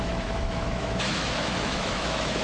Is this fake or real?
fake